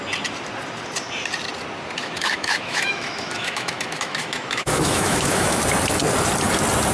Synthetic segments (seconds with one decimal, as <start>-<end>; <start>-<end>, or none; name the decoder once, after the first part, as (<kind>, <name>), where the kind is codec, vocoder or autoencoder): 2.0-5.6 (autoencoder, DAC-VAE)